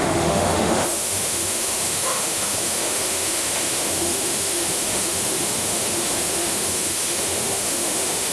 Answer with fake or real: fake